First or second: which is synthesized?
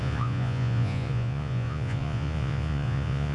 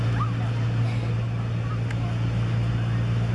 first